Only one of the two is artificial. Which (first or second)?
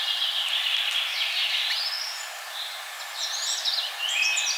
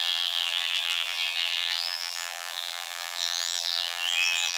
second